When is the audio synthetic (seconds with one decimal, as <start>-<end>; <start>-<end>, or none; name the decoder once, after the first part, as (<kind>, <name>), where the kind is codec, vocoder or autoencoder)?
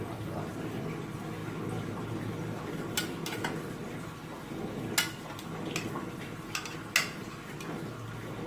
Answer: none